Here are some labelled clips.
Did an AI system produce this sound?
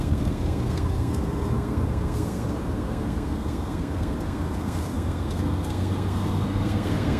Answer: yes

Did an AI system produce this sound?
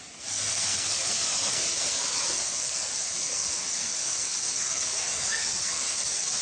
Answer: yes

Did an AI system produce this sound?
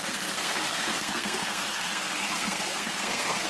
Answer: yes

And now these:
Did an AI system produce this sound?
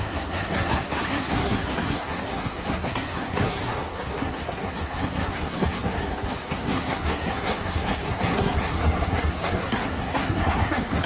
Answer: yes